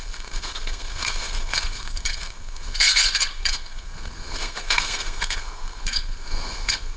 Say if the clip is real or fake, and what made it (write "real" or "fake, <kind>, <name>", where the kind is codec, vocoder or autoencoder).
fake, codec, SNAC